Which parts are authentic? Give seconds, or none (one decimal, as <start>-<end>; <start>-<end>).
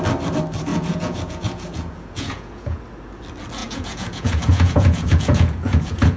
0.0-0.7; 2.8-3.6